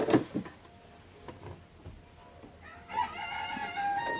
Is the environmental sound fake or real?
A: real